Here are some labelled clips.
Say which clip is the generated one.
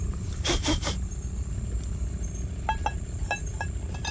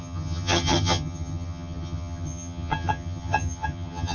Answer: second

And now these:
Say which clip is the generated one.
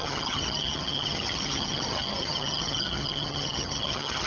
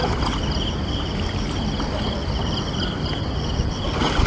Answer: first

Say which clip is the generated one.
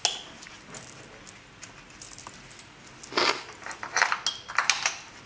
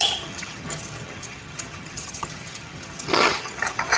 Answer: second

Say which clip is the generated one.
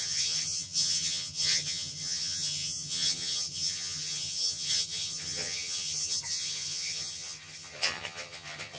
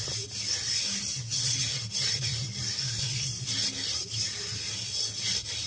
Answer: first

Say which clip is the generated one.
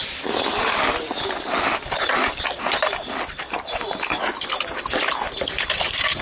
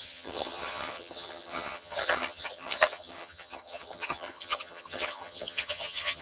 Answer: second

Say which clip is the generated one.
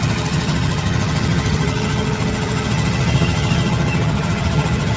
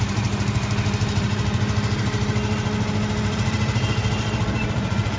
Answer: first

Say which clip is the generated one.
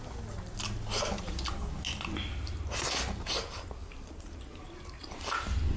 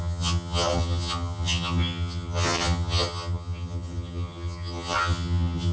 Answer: second